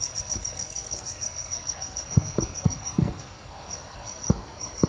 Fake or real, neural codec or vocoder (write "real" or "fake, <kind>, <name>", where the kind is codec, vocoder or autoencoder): fake, codec, SNAC